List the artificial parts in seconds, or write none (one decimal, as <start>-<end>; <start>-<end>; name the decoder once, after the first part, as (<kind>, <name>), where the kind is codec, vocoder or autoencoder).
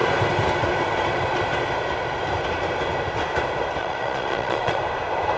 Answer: 3.8-4.8 (vocoder, Vocos)